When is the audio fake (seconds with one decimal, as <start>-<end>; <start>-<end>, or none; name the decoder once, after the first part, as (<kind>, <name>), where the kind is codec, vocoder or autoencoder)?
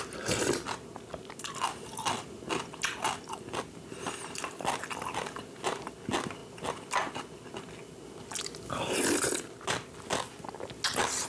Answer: none